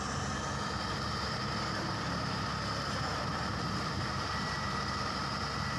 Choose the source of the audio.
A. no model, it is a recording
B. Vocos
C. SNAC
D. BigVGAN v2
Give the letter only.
D